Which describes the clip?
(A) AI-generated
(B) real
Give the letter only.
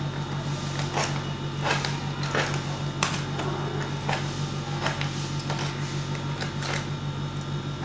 B